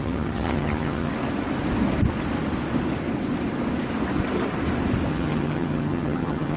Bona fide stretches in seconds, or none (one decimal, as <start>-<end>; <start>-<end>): 1.1-5.1